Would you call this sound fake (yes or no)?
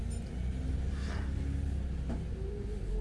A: no